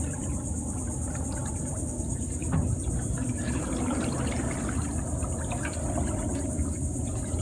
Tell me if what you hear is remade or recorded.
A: recorded